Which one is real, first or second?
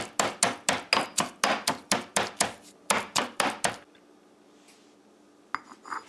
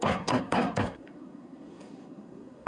first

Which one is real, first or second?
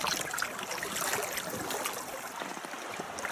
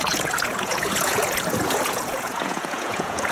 first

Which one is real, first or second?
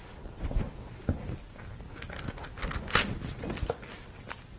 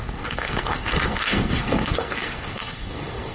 first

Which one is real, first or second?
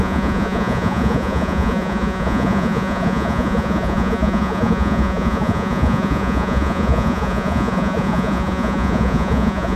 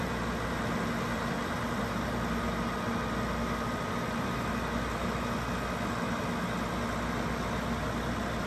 second